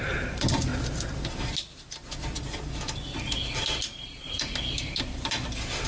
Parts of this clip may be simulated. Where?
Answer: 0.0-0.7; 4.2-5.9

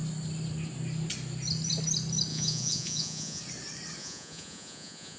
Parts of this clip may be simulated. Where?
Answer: 2.3-3.4; 4.0-5.2

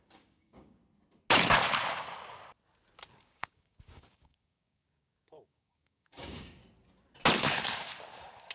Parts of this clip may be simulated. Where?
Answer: 0.0-0.8; 3.2-6.6; 7.4-8.5

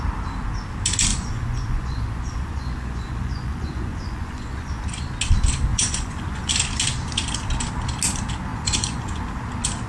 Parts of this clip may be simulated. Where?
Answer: 1.1-4.8; 5.7-6.5; 8.5-9.2

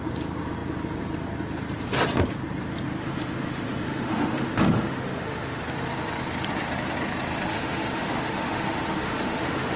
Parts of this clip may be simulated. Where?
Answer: 3.0-5.6; 7.5-9.8